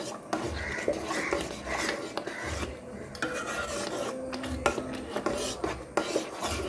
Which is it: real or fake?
real